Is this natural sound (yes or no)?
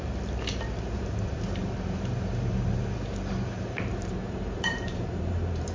no